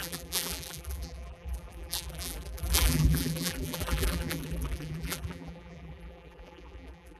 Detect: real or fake fake